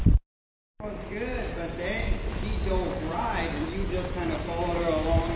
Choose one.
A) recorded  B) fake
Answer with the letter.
A